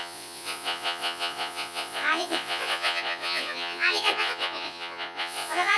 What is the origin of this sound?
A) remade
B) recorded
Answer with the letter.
A